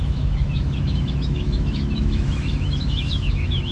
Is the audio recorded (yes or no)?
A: no